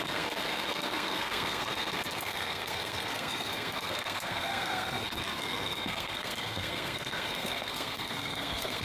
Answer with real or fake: fake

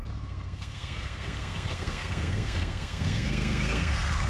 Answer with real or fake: fake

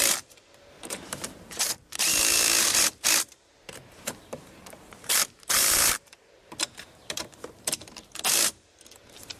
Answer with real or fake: fake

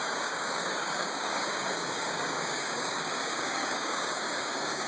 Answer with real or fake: fake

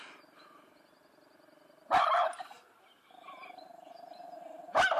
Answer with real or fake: real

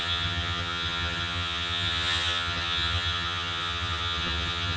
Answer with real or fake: fake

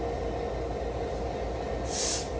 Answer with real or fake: real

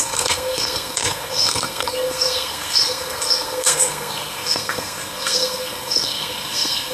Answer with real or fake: fake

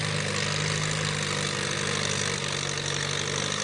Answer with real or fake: real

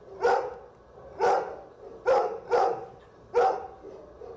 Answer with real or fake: real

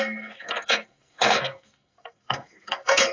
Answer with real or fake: fake